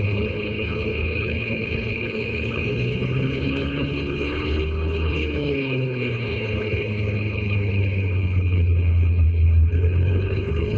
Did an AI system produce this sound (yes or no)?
yes